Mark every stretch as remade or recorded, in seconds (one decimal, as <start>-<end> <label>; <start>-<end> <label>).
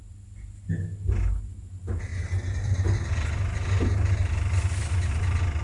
0.0-5.6 recorded